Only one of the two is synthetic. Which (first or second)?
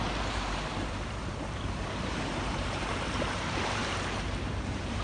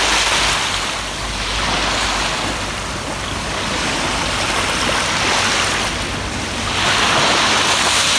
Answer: first